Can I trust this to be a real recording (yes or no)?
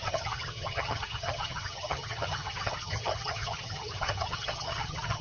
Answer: no